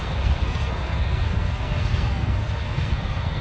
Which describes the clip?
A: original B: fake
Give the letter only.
B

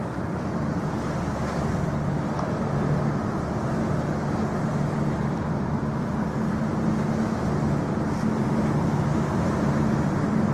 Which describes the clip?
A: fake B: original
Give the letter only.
B